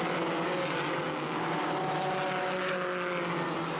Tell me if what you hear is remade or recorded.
recorded